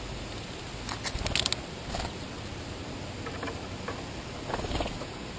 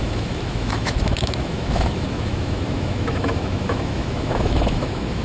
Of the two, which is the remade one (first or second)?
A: second